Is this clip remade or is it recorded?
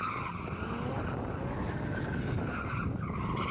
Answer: recorded